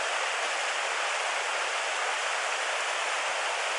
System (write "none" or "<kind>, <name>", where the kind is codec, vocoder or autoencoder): none